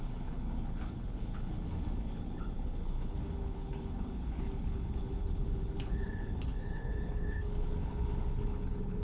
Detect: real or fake fake